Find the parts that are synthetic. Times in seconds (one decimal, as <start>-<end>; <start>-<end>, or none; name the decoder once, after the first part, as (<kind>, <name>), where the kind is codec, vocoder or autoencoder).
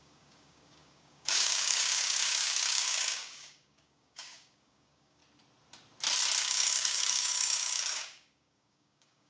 0.0-5.2 (codec, DAC); 6.4-9.3